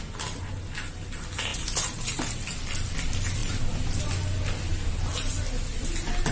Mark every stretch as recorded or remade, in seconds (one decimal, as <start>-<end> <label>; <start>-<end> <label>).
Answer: 0.0-1.5 recorded; 1.5-2.4 remade; 2.4-6.3 recorded